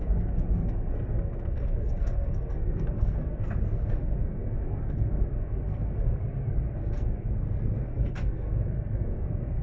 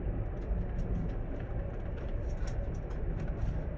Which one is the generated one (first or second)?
first